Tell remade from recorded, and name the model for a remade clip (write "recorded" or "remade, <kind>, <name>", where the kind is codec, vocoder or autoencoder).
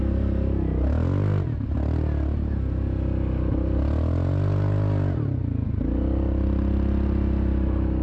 recorded